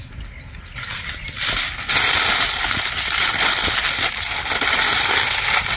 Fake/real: real